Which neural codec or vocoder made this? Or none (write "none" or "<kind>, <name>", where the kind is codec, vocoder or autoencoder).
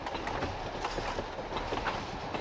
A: none